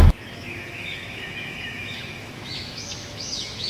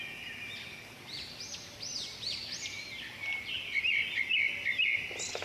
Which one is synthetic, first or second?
first